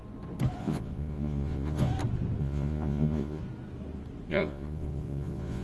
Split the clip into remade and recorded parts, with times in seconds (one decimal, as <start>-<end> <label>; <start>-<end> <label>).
0.0-0.6 recorded; 0.6-1.9 remade; 1.9-2.4 recorded; 2.4-3.4 remade; 3.4-4.3 recorded; 4.3-5.6 remade